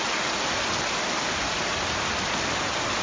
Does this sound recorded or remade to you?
recorded